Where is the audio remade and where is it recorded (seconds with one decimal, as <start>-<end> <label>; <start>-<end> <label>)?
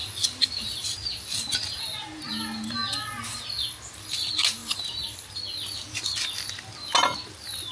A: 0.0-2.3 remade; 2.3-4.6 recorded; 4.6-5.3 remade; 5.3-7.7 recorded